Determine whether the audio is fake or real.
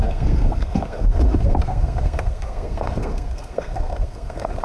fake